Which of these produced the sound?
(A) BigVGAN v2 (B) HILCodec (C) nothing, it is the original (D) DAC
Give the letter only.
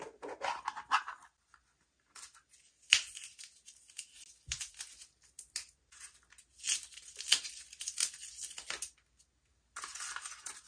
C